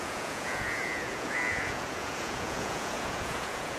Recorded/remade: remade